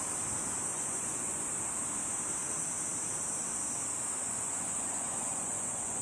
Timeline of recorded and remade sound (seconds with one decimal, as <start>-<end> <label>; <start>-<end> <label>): 0.0-0.7 recorded; 0.7-1.4 remade; 1.4-4.2 recorded; 4.2-6.0 remade

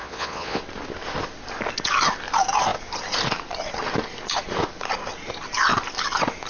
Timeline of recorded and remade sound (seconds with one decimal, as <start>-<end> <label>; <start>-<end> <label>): 0.0-0.6 remade; 0.6-6.5 recorded

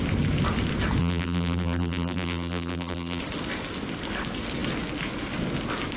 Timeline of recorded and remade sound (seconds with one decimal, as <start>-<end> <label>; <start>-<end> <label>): 0.0-1.0 recorded; 1.0-3.2 remade; 3.2-6.0 recorded

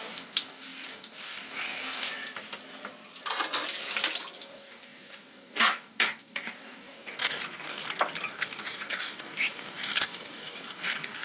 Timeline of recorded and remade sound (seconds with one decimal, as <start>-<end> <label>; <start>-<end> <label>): 0.0-2.1 remade; 2.1-4.4 recorded; 4.4-7.8 remade; 7.8-8.3 recorded; 8.3-11.2 remade

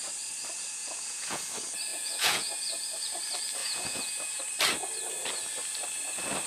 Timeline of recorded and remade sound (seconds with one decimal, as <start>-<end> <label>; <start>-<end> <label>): 0.0-0.8 recorded; 0.8-1.4 remade; 1.4-1.9 recorded; 1.9-2.5 remade; 2.5-3.6 recorded; 3.6-4.4 remade; 4.4-6.5 recorded

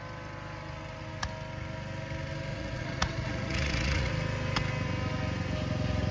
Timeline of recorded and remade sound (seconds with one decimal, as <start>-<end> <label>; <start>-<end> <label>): 0.0-2.5 recorded; 2.5-4.1 remade; 4.1-6.1 recorded

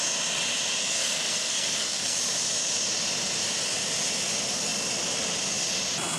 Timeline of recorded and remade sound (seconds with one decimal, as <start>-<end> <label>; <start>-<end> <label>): 0.0-0.8 recorded; 0.8-2.2 remade; 2.2-6.2 recorded